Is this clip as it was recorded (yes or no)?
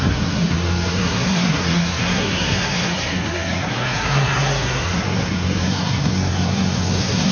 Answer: no